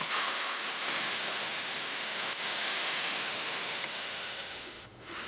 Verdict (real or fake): fake